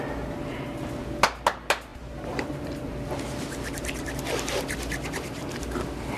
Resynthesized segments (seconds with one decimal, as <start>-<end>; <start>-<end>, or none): 1.9-2.9